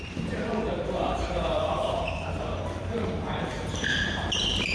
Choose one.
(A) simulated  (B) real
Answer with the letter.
A